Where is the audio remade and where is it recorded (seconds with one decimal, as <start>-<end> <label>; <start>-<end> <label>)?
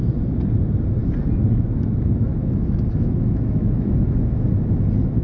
0.0-2.3 recorded; 2.3-4.5 remade; 4.5-5.2 recorded